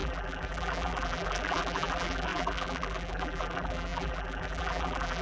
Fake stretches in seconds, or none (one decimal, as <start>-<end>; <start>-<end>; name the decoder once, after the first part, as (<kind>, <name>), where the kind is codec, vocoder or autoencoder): 0.0-5.2 (vocoder, BigVGAN v2)